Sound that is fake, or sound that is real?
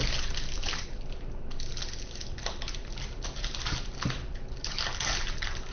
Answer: real